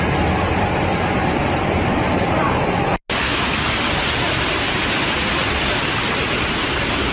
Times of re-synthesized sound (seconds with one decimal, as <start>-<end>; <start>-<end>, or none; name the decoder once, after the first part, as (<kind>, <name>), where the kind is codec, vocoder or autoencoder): none

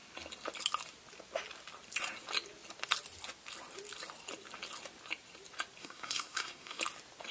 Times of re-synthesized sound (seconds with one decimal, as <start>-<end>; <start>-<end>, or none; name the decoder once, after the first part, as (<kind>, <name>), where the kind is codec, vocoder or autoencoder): 5.8-6.8 (codec, SNAC)